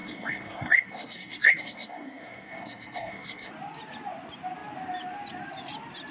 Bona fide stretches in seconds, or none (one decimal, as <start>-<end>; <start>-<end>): 3.5-6.1

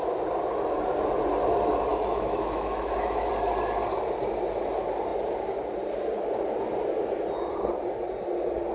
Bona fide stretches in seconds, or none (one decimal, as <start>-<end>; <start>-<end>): 0.0-1.9; 3.3-8.7

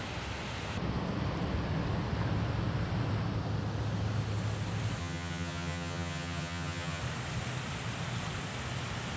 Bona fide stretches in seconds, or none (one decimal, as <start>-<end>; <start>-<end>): 0.0-5.0; 7.0-9.2

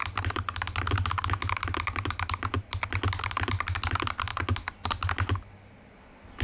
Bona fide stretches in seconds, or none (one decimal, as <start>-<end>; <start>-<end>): 0.0-6.4

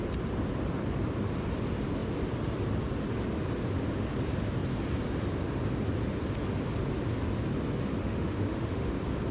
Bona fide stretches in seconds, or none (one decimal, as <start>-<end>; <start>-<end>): 0.0-7.9; 8.9-9.3

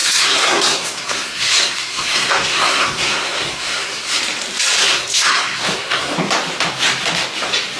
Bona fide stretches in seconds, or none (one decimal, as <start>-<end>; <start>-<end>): 4.2-4.8; 6.1-7.8